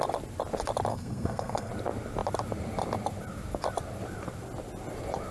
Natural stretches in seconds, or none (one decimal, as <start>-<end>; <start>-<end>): 0.0-0.9; 1.7-5.3